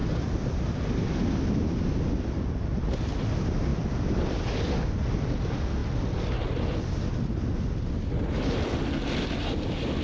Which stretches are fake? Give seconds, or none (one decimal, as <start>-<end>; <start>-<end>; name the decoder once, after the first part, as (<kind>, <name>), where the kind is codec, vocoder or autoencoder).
none